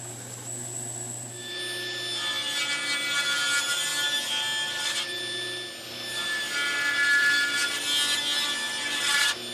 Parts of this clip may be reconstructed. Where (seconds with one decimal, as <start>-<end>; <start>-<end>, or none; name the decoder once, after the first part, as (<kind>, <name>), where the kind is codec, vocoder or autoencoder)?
none